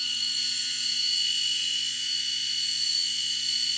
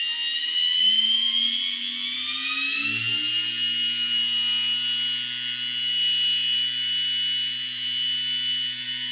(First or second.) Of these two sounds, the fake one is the first